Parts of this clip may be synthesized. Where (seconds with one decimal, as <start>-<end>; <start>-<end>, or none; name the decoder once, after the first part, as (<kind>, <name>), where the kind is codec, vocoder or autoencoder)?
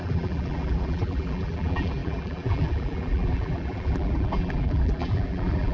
0.0-5.7 (vocoder, BigVGAN v2)